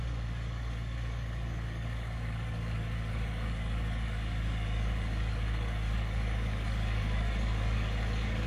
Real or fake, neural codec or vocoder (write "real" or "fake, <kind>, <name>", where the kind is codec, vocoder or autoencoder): fake, codec, DAC